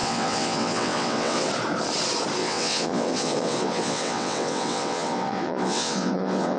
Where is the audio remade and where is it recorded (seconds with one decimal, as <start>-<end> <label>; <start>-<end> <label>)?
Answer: 0.0-1.5 remade; 1.5-2.4 recorded; 2.4-6.6 remade